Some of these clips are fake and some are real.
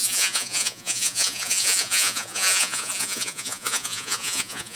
fake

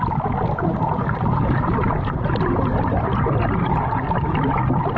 real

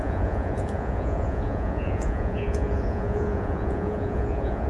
fake